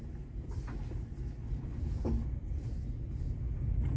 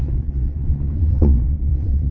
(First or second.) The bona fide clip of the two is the first